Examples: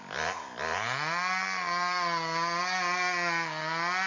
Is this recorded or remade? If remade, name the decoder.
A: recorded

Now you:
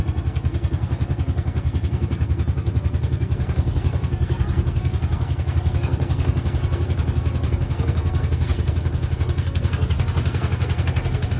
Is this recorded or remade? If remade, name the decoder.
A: remade, codec, SNAC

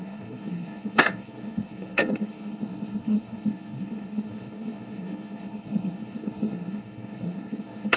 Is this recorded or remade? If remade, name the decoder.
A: remade, codec, SNAC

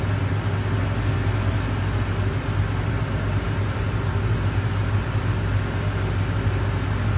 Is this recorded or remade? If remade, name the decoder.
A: recorded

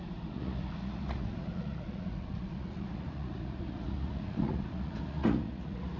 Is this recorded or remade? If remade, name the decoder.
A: remade, vocoder, Vocos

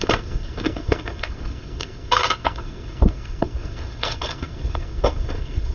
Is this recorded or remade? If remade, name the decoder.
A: remade, codec, SNAC